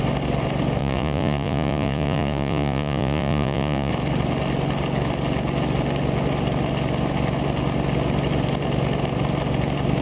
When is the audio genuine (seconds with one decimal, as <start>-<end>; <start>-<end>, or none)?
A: 0.0-0.8; 3.9-10.0